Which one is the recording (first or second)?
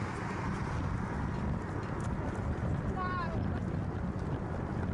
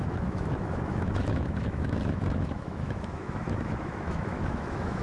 first